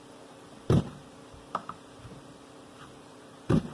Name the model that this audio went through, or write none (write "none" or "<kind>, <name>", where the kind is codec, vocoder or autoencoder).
vocoder, BigVGAN v2